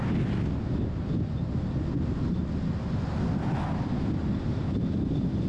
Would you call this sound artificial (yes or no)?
no